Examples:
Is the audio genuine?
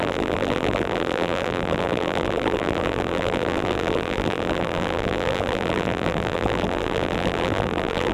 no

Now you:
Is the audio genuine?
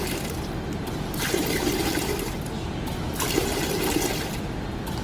yes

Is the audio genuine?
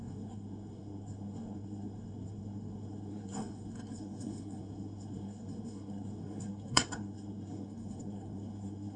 no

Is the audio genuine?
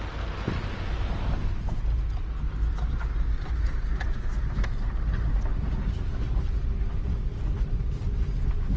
yes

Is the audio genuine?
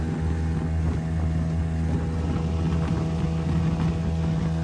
yes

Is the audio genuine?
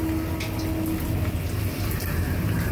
yes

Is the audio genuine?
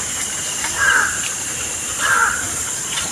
no